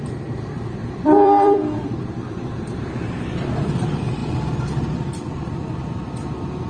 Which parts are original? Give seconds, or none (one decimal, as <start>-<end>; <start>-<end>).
0.0-0.8; 2.6-6.7